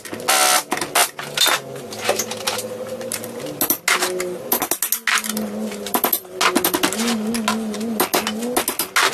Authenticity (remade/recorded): recorded